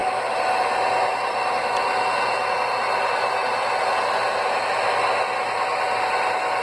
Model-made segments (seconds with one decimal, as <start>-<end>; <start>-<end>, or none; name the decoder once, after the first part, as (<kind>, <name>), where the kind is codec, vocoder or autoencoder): none